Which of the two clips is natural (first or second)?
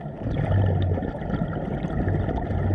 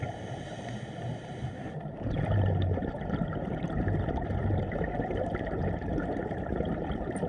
first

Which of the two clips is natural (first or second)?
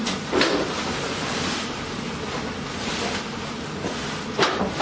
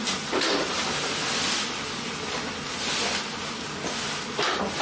second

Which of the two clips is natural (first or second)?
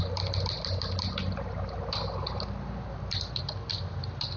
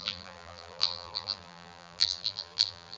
first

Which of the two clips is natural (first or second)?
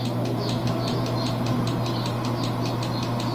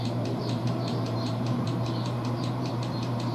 first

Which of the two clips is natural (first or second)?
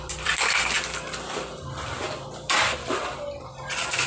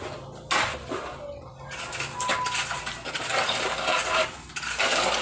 second